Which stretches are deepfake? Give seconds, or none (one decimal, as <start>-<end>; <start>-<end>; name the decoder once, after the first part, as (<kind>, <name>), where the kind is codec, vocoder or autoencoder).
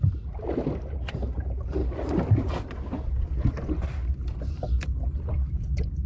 0.0-1.8 (vocoder, BigVGAN v2); 5.5-6.1